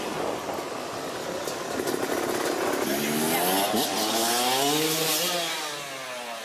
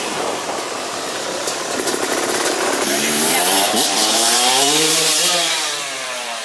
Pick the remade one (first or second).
second